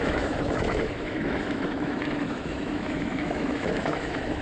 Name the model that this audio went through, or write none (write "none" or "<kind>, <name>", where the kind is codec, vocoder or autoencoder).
autoencoder, DAC-VAE